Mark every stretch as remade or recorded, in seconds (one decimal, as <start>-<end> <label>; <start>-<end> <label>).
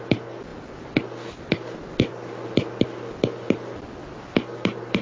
0.0-5.0 recorded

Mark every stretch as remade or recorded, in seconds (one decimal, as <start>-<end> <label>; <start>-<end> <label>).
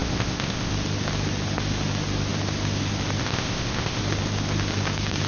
0.0-0.7 remade; 0.7-3.2 recorded; 3.2-4.0 remade; 4.0-5.3 recorded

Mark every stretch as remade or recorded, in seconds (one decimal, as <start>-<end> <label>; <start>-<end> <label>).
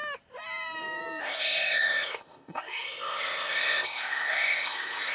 0.0-1.2 recorded; 1.2-5.1 remade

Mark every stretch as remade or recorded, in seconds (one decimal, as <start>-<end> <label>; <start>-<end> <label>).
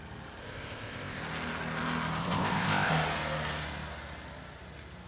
0.0-0.4 recorded; 0.4-1.2 remade; 1.2-2.2 recorded; 2.2-2.9 remade; 2.9-5.1 recorded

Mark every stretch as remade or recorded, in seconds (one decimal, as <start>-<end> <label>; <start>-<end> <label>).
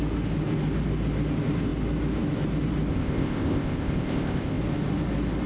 0.0-2.9 recorded; 2.9-4.6 remade; 4.6-5.5 recorded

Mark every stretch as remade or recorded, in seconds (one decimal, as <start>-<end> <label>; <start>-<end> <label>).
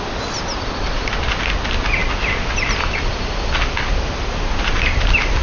0.0-5.4 recorded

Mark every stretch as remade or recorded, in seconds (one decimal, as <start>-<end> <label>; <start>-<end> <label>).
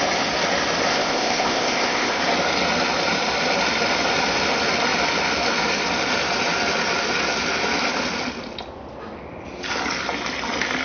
0.0-0.9 recorded; 0.9-2.2 remade; 2.2-10.8 recorded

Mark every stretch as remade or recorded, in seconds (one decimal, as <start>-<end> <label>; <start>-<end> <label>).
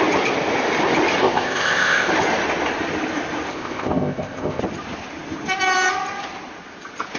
0.0-1.2 recorded; 1.2-2.1 remade; 2.1-3.5 recorded; 3.5-4.6 remade; 4.6-7.2 recorded